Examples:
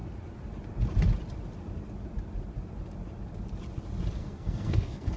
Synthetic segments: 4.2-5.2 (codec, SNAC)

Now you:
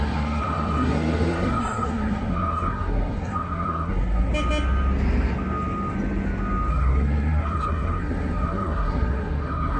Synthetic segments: 0.0-4.3 (codec, SNAC); 6.7-9.8

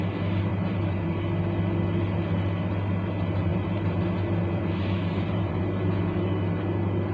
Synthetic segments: 0.5-1.2 (vocoder, BigVGAN v2); 3.5-5.6

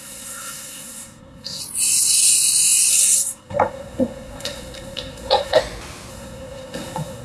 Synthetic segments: 0.0-1.6 (codec, SNAC); 2.9-5.6; 6.1-7.2

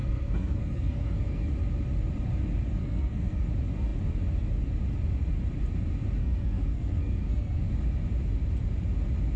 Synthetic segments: 0.0-1.5 (codec, SNAC); 2.8-3.5; 6.2-7.7

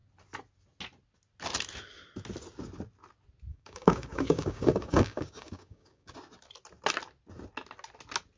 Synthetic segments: 3.5-6.1 (codec, DAC)